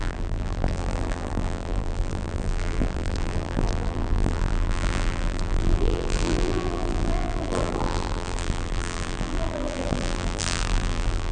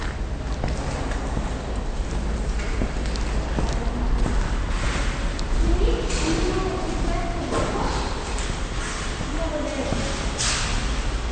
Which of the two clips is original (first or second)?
second